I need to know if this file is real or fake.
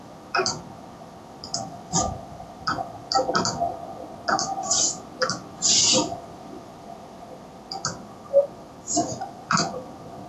fake